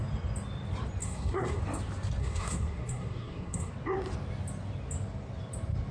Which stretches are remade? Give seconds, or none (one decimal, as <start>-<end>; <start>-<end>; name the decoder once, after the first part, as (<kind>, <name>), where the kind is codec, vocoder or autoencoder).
1.0-1.6 (codec, SNAC); 2.2-3.7